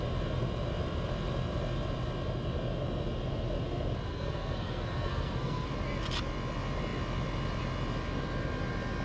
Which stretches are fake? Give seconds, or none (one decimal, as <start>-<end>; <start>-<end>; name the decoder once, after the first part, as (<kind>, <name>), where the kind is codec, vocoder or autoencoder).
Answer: 4.1-5.7 (codec, SNAC)

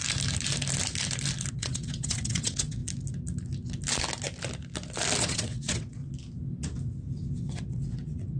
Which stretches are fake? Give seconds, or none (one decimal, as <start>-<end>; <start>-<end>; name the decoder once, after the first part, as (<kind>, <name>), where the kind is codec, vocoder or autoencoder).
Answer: 1.5-2.8 (vocoder, WaveNeXt); 5.2-6.0; 7.5-8.4

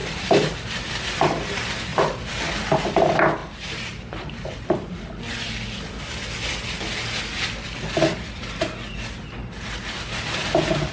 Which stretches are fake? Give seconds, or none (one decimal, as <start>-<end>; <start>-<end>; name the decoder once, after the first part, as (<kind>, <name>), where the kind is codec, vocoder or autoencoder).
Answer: 0.0-0.8 (vocoder, BigVGAN v2); 1.9-2.5; 3.4-5.1

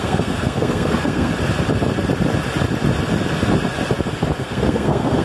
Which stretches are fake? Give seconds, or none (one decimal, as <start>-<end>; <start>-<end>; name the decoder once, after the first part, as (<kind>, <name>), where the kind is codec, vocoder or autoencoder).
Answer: 0.0-1.3 (codec, SNAC); 4.4-5.2

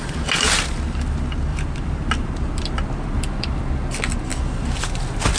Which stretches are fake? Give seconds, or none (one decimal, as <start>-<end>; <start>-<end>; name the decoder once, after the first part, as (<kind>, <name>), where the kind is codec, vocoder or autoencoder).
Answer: 1.5-3.6 (vocoder, BigVGAN v2); 4.3-4.8

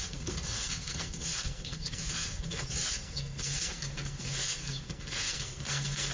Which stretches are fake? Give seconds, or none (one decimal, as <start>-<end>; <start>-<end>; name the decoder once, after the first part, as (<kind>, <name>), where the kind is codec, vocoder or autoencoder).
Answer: 0.0-6.1 (codec, SNAC)